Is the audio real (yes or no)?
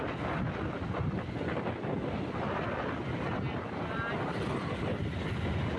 yes